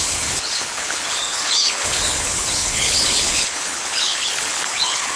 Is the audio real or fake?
fake